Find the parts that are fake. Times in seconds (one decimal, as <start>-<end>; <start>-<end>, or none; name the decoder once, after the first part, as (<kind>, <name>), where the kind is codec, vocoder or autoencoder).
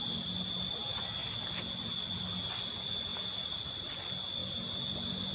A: none